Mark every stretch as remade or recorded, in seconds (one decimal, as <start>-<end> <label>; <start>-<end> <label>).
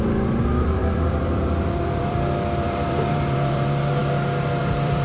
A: 0.0-4.0 remade; 4.0-4.6 recorded; 4.6-5.0 remade